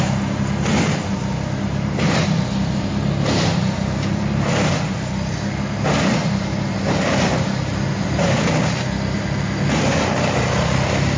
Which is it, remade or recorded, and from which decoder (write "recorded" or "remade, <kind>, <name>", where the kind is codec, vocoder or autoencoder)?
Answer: recorded